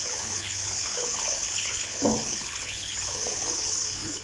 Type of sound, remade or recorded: remade